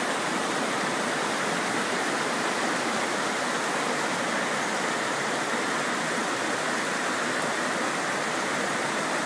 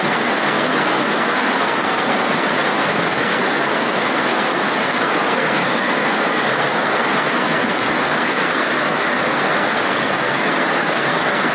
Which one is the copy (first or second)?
second